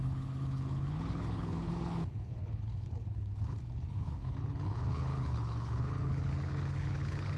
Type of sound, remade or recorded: remade